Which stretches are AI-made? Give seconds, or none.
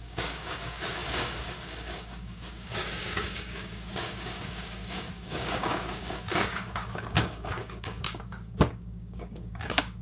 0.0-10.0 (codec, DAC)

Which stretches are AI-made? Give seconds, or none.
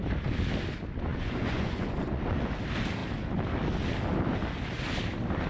1.1-2.5 (vocoder, Vocos)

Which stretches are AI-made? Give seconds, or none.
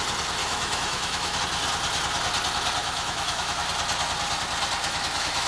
0.4-1.4 (autoencoder, DAC-VAE); 2.8-3.6; 4.8-5.5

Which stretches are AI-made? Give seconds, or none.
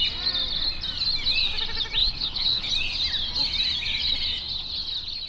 2.0-2.7 (codec, HILCodec)